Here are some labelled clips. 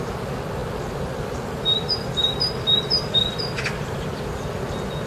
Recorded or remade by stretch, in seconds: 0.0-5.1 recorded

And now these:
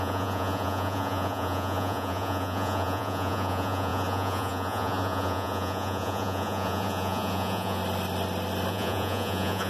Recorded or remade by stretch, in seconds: 0.0-7.8 remade; 7.8-8.7 recorded; 8.7-9.7 remade

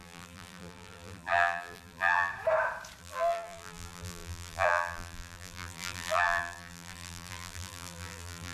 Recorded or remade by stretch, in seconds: 0.0-2.3 remade; 2.3-3.0 recorded; 3.0-8.5 remade